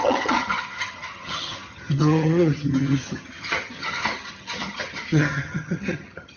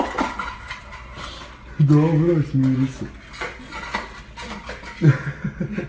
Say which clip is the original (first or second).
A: second